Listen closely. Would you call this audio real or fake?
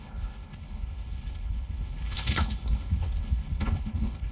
fake